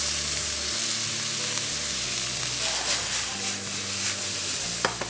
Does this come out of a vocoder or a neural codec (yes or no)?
no